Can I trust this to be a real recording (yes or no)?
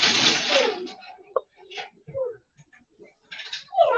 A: no